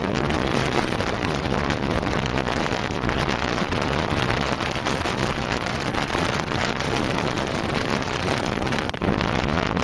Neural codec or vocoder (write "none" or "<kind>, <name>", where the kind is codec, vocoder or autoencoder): vocoder, Vocos